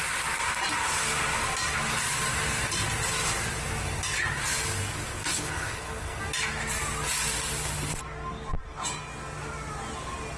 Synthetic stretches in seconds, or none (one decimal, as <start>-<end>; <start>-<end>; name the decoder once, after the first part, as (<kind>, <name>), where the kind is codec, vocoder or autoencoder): 5.1-6.2 (codec, SNAC)